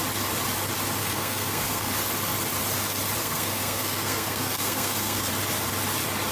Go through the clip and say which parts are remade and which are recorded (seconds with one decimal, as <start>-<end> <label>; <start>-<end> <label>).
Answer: 0.0-1.0 recorded; 1.0-1.9 remade; 1.9-3.2 recorded; 3.2-5.3 remade; 5.3-6.3 recorded

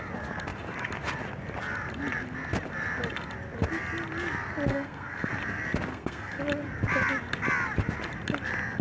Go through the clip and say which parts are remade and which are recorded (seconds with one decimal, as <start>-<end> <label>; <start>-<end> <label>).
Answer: 0.0-4.7 recorded; 4.7-5.3 remade; 5.3-5.9 recorded; 5.9-6.4 remade; 6.4-8.8 recorded

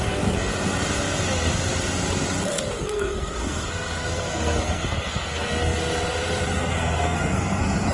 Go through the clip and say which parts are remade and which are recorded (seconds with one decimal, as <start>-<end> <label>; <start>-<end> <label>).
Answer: 0.0-0.5 remade; 0.5-2.8 recorded; 2.8-5.7 remade; 5.7-6.6 recorded; 6.6-7.9 remade

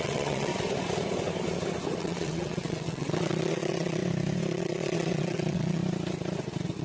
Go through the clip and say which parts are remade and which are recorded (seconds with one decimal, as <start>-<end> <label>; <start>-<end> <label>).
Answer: 0.0-0.5 remade; 0.5-2.0 recorded; 2.0-4.0 remade; 4.0-4.5 recorded; 4.5-5.8 remade; 5.8-6.8 recorded

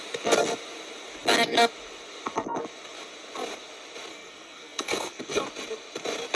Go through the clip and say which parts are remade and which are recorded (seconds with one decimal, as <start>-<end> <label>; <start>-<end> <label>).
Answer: 0.0-4.1 recorded; 4.1-5.4 remade; 5.4-6.3 recorded

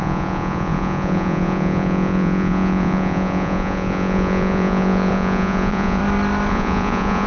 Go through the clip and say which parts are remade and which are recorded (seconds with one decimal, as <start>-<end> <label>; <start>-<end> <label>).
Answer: 0.0-6.0 remade; 6.0-6.5 recorded; 6.5-7.3 remade

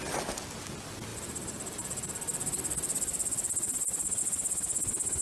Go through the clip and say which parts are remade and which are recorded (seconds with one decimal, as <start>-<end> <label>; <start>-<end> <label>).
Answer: 0.0-5.2 recorded